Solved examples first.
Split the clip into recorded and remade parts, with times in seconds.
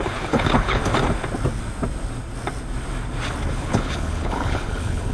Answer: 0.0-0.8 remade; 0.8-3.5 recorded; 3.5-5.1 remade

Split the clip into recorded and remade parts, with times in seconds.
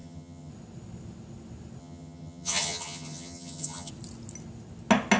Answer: 0.0-0.5 remade; 0.5-1.8 recorded; 1.8-3.9 remade; 3.9-5.2 recorded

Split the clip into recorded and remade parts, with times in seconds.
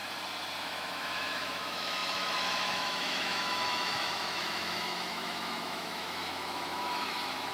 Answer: 0.0-0.6 recorded; 0.6-7.5 remade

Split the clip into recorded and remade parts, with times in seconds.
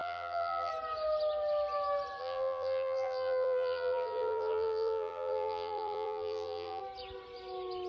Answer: 0.0-0.7 remade; 0.7-2.2 recorded; 2.2-6.8 remade; 6.8-7.9 recorded